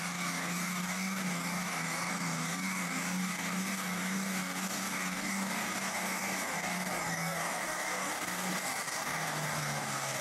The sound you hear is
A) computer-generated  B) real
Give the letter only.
A